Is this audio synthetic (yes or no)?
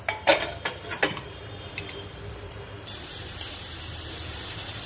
yes